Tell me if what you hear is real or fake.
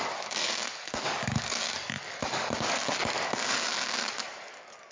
fake